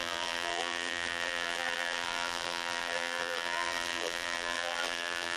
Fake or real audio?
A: fake